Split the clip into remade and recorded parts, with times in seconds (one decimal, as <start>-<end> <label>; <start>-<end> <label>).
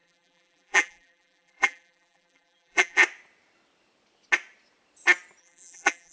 0.0-3.0 remade; 3.0-5.4 recorded; 5.4-6.1 remade